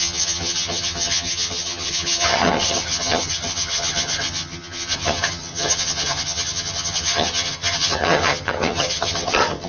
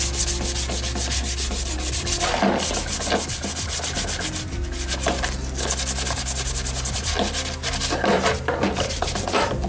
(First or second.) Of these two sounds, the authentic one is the second